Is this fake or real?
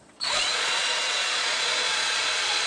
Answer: fake